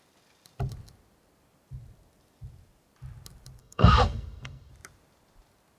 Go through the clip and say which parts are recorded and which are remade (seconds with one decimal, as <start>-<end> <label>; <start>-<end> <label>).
0.0-3.6 recorded; 3.6-4.7 remade; 4.7-5.8 recorded